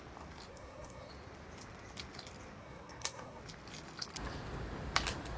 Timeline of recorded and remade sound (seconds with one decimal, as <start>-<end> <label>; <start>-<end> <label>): 0.0-0.5 recorded; 0.5-1.1 remade; 1.1-2.6 recorded; 2.6-3.4 remade; 3.4-5.4 recorded